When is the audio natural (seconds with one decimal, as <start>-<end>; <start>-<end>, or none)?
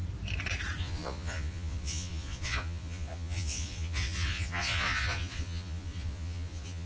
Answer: 0.0-0.8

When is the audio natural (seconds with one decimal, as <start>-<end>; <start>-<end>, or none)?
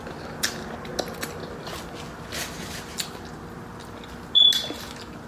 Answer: 0.0-5.3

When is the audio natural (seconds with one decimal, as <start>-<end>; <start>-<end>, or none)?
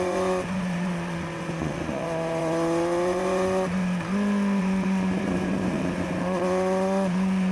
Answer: 3.8-4.6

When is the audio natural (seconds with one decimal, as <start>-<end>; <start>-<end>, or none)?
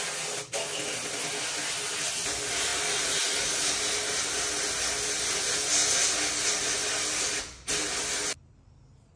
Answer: 0.0-9.2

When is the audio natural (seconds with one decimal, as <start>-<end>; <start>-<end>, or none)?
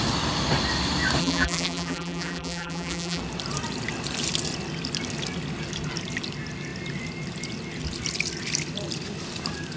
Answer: 0.0-1.2; 3.2-9.8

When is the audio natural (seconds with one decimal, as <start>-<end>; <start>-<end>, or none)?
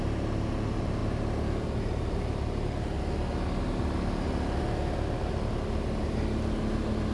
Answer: 0.0-7.1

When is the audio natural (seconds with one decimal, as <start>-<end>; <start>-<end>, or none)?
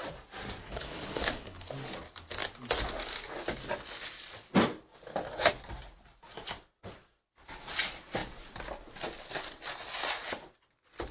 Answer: 0.0-0.6; 1.7-11.1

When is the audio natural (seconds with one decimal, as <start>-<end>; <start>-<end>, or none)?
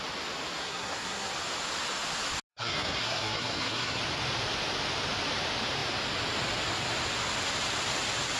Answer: 0.0-0.6; 1.3-2.5; 4.0-8.4